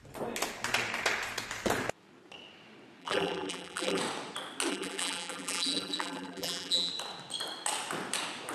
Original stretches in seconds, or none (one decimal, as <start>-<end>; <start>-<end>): 0.0-3.0; 4.0-4.7; 6.9-8.5